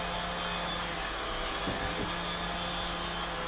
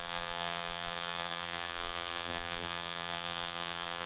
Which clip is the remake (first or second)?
second